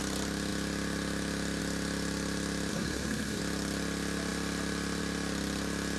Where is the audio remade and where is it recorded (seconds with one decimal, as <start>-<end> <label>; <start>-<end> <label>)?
0.0-2.7 recorded; 2.7-3.4 remade; 3.4-6.0 recorded